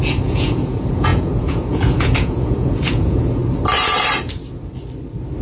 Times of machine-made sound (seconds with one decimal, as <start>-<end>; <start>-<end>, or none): 0.0-3.4